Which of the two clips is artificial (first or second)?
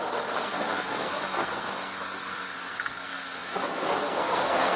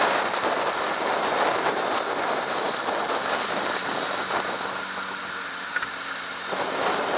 first